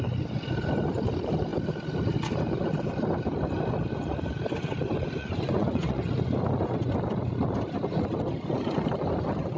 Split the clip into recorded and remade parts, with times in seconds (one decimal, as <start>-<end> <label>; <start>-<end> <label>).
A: 0.0-5.2 recorded; 5.2-6.1 remade; 6.1-9.6 recorded

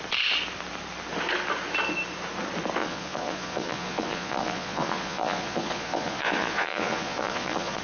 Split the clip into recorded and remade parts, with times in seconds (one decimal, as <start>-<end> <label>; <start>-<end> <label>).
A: 0.0-2.8 recorded; 2.8-7.8 remade

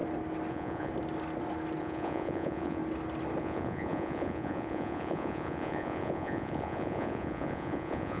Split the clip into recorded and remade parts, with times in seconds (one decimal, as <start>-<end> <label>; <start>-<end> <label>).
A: 0.0-0.5 recorded; 0.5-0.9 remade; 0.9-1.8 recorded; 1.8-2.8 remade; 2.8-3.4 recorded; 3.4-8.2 remade

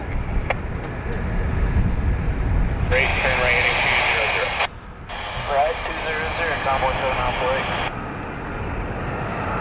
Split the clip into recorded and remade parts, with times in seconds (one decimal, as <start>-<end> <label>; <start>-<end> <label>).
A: 0.0-9.6 recorded

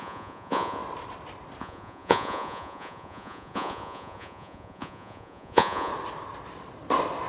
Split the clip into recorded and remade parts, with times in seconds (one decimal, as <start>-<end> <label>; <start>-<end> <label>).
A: 0.0-0.8 remade; 0.8-1.6 recorded; 1.6-5.9 remade; 5.9-7.3 recorded